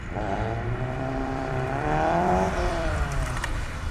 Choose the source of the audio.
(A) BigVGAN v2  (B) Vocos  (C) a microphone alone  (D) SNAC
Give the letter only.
A